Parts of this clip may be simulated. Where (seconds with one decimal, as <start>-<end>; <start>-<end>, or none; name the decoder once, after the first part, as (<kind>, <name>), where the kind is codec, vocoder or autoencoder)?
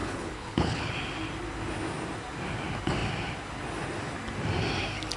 0.0-0.9 (codec, HILCodec)